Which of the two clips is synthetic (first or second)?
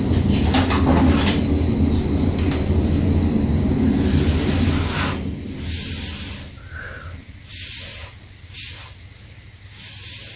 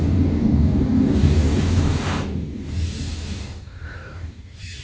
second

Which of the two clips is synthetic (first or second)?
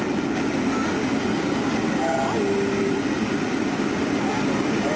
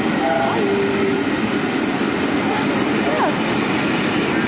second